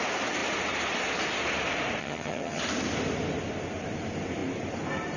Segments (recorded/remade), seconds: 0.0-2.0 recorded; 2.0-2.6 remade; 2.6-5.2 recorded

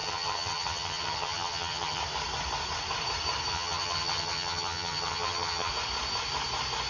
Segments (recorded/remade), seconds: 0.0-2.0 remade; 2.0-3.5 recorded; 3.5-5.7 remade; 5.7-6.9 recorded